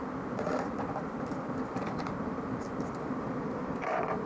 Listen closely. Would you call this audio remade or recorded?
recorded